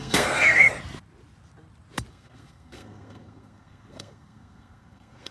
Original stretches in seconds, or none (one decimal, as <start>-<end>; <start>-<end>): 0.7-2.1